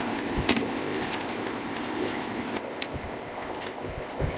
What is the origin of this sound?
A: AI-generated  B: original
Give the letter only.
A